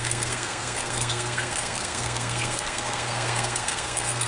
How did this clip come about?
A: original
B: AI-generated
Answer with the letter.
B